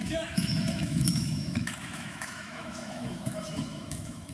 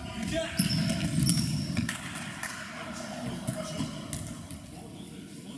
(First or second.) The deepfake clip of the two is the first